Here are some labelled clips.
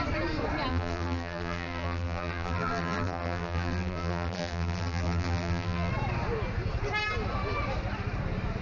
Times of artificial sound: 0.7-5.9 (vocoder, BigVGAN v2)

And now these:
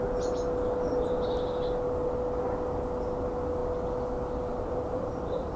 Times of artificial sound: none

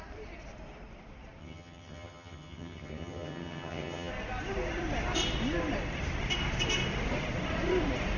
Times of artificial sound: 1.4-4.1 (vocoder, HiFi-GAN)

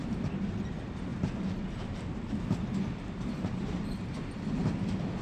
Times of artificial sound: 1.1-4.2 (vocoder, BigVGAN v2)

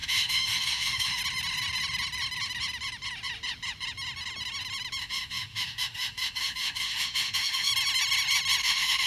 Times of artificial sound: 0.0-1.2 (autoencoder, DAC-VAE); 5.0-7.7; 8.6-9.1